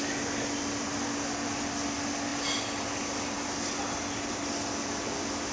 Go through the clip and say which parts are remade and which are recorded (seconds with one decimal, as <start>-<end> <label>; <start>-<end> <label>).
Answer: 0.0-5.5 recorded